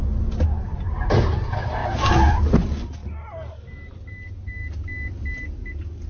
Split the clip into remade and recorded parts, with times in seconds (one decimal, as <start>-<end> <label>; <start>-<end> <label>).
0.0-6.1 recorded